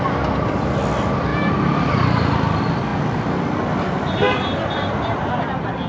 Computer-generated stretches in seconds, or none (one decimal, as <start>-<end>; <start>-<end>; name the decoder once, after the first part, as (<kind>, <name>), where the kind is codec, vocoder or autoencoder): none